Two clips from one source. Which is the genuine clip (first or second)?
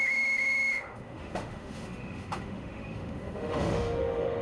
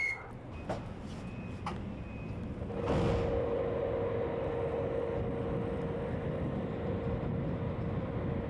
second